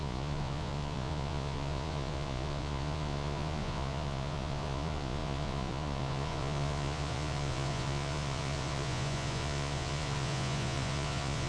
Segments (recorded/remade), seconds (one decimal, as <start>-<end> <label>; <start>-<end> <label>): 0.0-11.5 remade